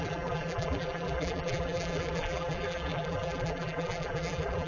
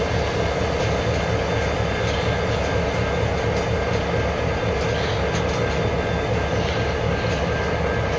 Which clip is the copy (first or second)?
first